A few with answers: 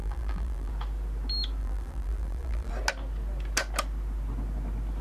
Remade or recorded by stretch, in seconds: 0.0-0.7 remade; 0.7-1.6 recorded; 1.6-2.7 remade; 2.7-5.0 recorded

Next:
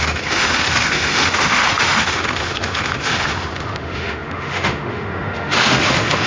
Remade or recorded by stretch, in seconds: 0.0-6.3 remade